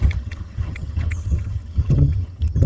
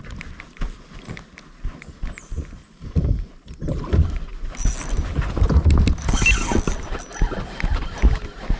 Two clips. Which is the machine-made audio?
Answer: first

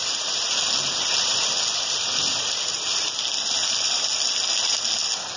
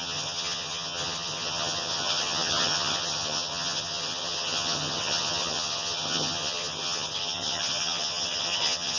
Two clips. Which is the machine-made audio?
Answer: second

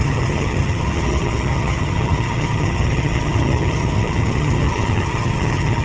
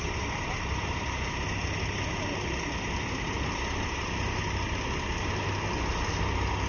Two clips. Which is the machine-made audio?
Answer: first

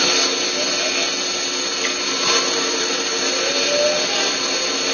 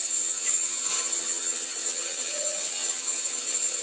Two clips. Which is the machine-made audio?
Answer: second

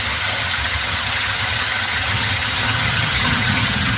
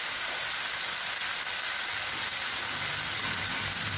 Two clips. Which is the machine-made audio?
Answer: first